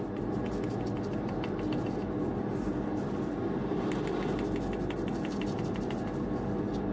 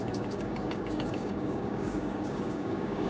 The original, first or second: first